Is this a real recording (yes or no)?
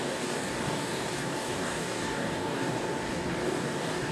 no